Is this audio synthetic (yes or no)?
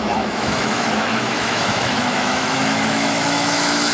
yes